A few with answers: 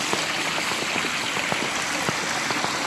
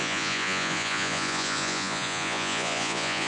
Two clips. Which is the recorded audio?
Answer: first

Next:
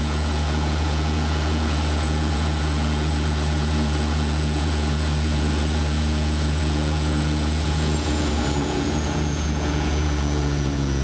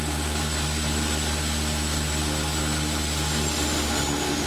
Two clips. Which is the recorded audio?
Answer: second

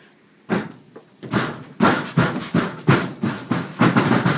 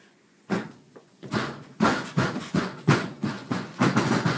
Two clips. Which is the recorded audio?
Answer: first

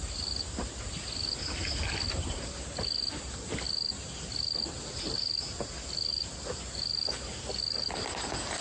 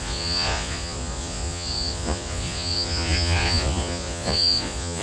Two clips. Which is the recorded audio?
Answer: first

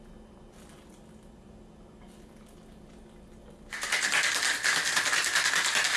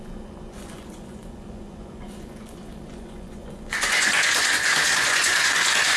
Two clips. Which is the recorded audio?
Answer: first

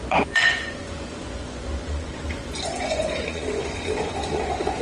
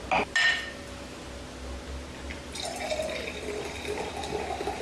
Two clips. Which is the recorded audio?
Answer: second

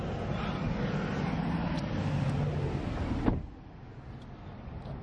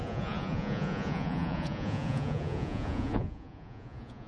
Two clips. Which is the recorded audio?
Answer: first